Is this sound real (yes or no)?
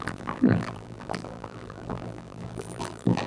no